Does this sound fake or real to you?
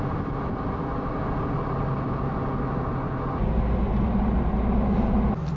real